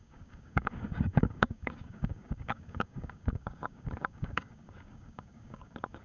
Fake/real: fake